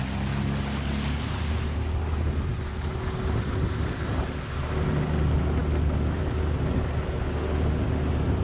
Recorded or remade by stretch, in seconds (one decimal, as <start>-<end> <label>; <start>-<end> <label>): 0.0-8.4 recorded